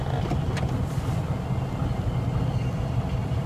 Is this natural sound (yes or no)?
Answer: yes